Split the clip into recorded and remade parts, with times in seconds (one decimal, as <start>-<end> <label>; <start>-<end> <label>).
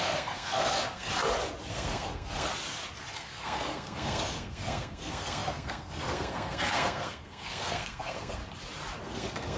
0.0-1.1 remade; 1.1-1.7 recorded; 1.7-2.5 remade; 2.5-3.1 recorded; 3.1-8.4 remade; 8.4-9.0 recorded; 9.0-9.6 remade